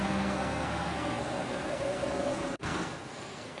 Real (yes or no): no